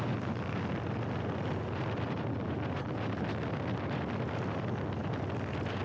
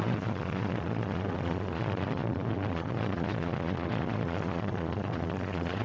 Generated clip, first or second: second